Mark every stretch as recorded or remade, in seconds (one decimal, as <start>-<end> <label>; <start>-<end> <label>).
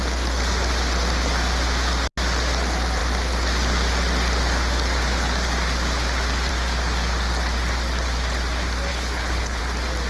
0.0-8.9 recorded; 8.9-9.6 remade; 9.6-10.1 recorded